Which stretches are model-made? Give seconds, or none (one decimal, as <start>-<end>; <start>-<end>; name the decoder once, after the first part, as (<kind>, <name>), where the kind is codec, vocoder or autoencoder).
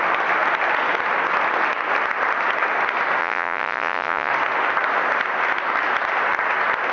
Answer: 3.2-4.3 (vocoder, Vocos)